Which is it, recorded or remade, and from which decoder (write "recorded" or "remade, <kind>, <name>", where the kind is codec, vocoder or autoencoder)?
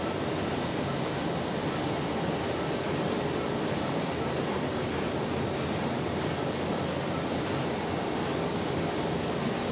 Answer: recorded